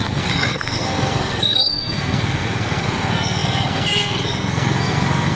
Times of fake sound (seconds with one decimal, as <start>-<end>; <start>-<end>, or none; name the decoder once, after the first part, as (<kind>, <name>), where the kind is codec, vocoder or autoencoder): 0.0-5.4 (codec, SNAC)